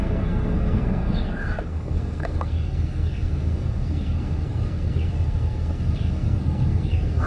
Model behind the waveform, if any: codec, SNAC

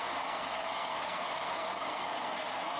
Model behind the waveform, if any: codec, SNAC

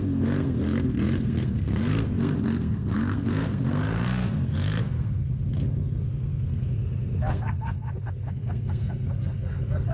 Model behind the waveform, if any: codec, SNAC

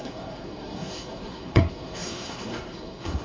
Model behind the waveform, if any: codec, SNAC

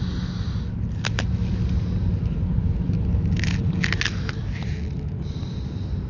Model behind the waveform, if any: none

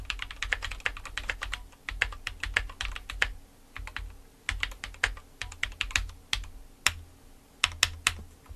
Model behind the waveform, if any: none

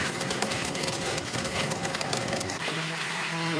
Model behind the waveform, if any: codec, SNAC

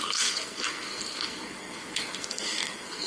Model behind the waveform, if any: codec, SNAC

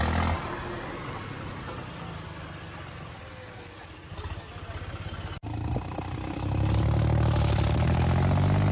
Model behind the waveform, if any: none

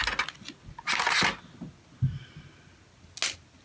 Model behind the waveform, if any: none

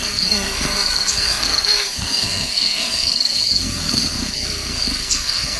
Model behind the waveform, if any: codec, SNAC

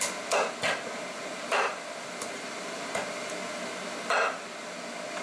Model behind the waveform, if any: none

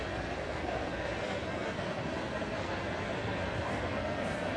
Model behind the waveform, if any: codec, SNAC